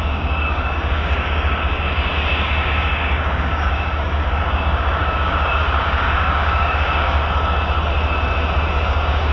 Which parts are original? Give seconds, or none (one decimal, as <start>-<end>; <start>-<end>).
7.2-8.7